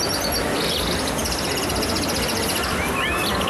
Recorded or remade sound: recorded